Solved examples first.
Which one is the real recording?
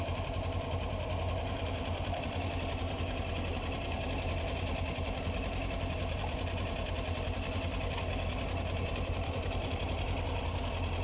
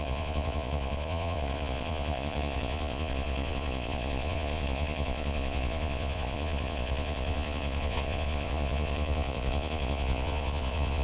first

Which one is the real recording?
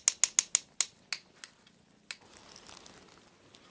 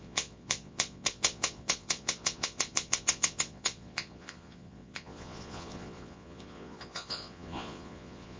first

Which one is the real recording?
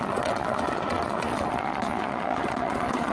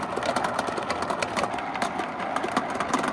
second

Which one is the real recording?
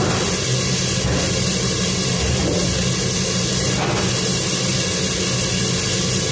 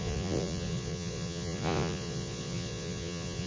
first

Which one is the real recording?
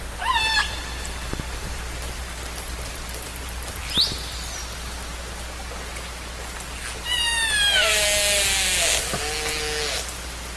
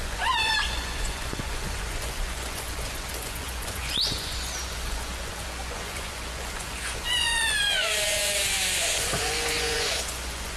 first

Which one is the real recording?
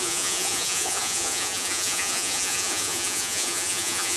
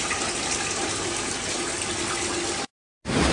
second